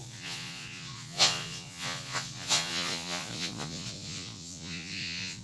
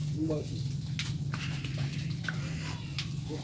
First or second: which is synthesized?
first